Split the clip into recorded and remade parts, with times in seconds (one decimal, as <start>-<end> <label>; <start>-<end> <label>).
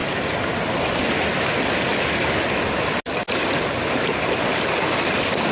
0.0-5.5 recorded